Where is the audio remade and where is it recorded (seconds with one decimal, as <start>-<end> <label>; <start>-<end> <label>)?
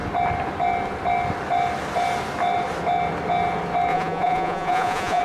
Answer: 0.0-3.9 recorded; 3.9-5.2 remade